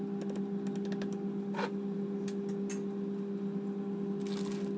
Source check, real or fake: real